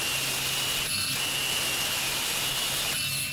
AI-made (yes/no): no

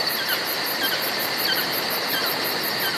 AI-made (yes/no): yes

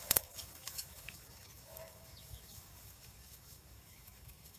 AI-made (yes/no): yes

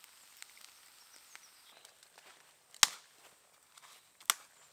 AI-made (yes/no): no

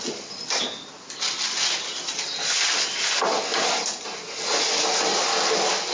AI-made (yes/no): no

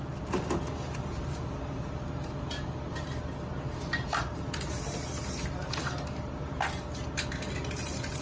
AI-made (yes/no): no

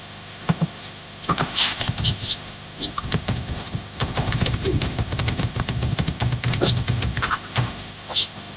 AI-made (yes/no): yes